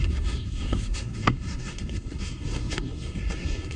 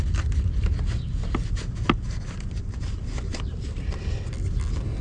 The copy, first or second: first